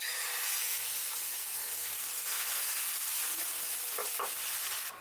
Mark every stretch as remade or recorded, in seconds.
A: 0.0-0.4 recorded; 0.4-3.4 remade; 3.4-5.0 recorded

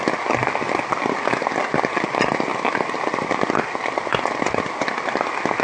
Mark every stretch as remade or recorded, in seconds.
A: 0.0-5.6 recorded

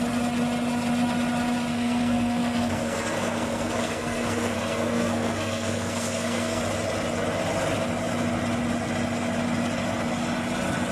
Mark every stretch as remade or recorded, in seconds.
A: 0.0-1.7 recorded; 1.7-6.6 remade; 6.6-10.9 recorded

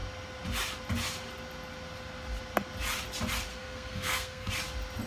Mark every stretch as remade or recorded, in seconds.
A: 0.0-3.5 recorded; 3.5-4.5 remade; 4.5-5.1 recorded

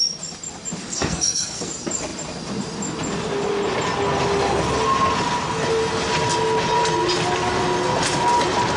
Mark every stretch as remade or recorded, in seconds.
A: 0.0-0.8 recorded; 0.8-1.7 remade; 1.7-8.8 recorded

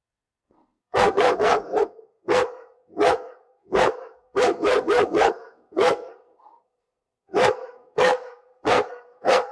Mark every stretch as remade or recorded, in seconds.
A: 0.0-9.5 remade

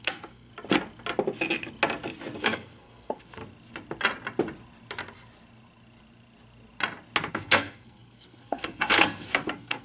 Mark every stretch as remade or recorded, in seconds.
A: 0.0-0.5 remade; 0.5-2.4 recorded; 2.4-3.4 remade; 3.4-7.3 recorded; 7.3-9.8 remade

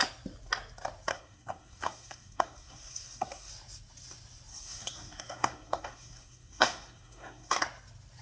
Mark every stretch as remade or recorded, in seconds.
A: 0.0-1.1 recorded; 1.1-3.5 remade; 3.5-4.5 recorded; 4.5-7.6 remade; 7.6-8.2 recorded